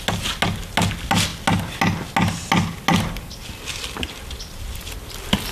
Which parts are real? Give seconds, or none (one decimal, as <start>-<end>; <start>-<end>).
0.0-5.5